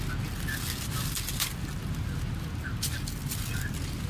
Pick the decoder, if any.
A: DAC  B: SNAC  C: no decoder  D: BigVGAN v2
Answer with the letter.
C